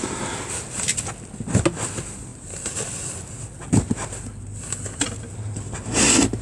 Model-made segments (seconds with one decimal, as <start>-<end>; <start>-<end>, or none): none